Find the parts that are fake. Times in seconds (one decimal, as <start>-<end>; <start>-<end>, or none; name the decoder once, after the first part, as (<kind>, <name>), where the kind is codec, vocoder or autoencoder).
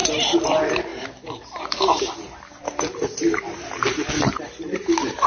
0.0-0.5 (vocoder, BigVGAN v2); 0.9-4.1